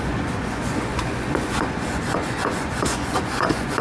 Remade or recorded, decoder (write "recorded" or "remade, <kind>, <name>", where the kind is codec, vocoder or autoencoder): remade, vocoder, Vocos